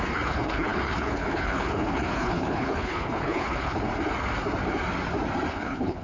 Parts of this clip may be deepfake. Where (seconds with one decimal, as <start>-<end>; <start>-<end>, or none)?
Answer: 0.0-3.9; 5.5-6.0